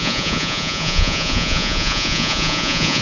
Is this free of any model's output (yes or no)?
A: no